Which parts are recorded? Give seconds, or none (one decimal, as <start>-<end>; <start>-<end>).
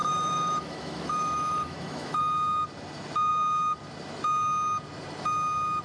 2.2-5.8